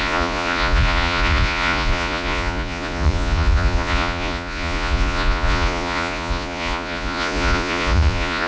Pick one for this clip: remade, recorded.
remade